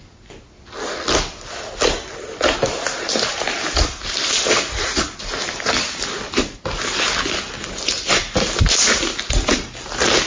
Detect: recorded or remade recorded